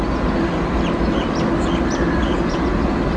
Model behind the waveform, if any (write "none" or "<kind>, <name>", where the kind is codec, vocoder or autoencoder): none